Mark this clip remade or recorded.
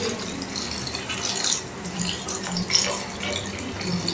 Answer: recorded